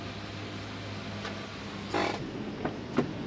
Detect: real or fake real